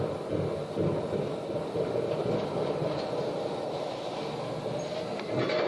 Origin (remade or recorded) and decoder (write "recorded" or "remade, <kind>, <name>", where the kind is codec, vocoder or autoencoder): recorded